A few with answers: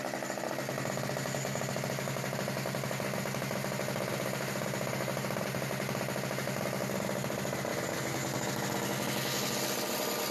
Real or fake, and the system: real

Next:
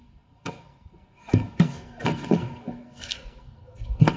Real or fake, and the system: fake, codec, SNAC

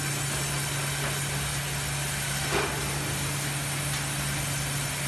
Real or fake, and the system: real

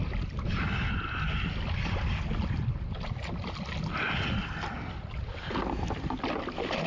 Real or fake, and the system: real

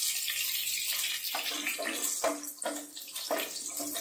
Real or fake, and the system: real